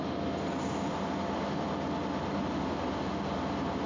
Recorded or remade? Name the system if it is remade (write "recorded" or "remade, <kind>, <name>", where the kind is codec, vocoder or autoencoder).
recorded